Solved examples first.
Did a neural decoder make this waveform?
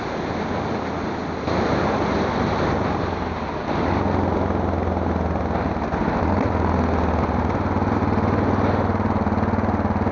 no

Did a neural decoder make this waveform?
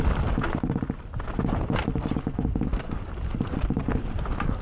no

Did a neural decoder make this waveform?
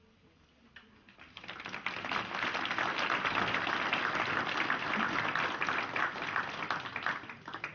no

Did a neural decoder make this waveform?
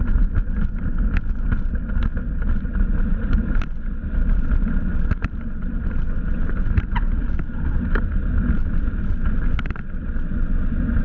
no